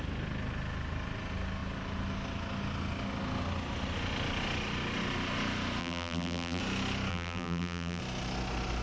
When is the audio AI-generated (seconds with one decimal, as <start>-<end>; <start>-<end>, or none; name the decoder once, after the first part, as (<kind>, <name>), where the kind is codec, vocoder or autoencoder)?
5.8-6.6 (vocoder, BigVGAN v2); 7.1-8.0